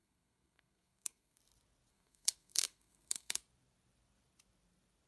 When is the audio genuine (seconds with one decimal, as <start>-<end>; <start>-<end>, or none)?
1.4-1.9; 3.4-5.1